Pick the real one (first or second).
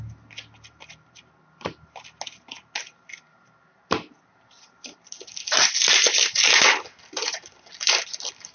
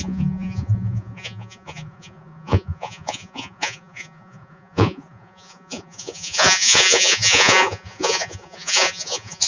first